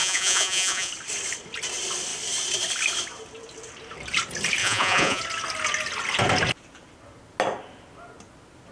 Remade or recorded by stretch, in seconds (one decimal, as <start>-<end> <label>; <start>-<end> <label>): 0.0-0.9 remade; 0.9-4.6 recorded; 4.6-5.2 remade; 5.2-8.7 recorded